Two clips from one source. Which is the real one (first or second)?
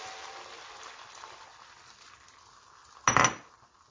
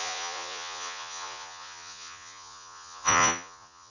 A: first